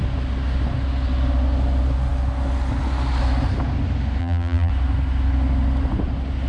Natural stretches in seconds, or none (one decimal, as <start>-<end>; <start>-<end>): 0.0-4.2; 4.7-6.5